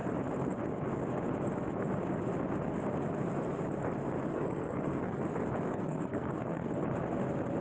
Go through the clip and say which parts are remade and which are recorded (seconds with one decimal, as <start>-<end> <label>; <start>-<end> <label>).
0.0-4.3 recorded; 4.3-5.2 remade; 5.2-5.7 recorded; 5.7-6.7 remade; 6.7-7.6 recorded